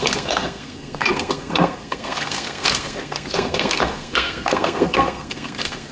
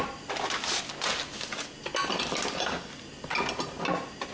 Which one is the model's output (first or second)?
first